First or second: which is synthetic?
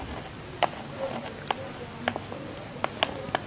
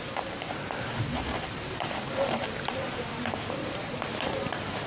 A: second